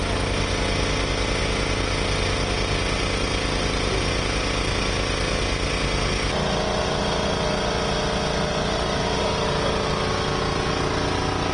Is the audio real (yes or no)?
yes